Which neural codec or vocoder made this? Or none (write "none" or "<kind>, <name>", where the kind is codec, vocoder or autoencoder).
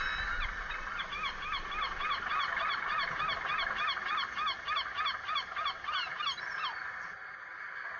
none